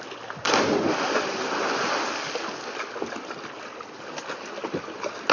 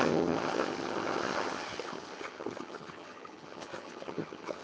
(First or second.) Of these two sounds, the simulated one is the second